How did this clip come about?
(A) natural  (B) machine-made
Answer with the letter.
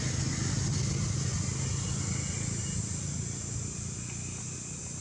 A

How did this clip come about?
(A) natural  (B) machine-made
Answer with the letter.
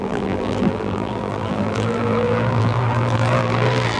B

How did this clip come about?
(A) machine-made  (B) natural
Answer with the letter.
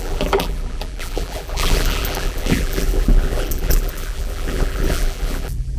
A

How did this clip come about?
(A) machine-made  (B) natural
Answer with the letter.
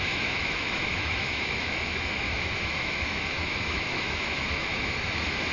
A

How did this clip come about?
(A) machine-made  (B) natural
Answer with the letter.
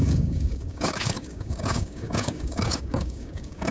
A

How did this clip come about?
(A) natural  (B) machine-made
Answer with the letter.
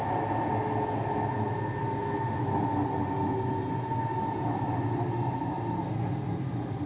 A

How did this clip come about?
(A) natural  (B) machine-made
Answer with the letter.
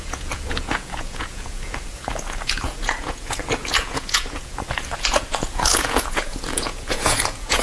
B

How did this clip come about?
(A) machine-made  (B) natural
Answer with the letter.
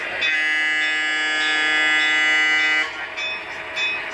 B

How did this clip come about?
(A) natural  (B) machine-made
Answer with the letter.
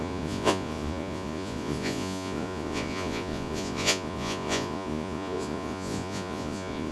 B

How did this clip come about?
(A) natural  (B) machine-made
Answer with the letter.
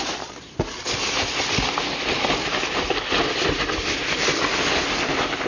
A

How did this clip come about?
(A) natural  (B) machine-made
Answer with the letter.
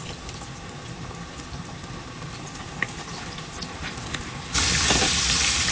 A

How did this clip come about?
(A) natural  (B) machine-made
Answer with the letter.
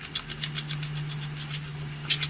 A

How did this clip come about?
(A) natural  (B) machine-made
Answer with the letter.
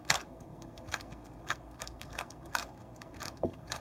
B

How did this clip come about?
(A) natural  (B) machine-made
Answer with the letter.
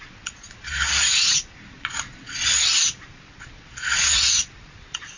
B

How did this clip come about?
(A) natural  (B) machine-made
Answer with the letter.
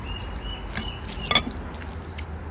A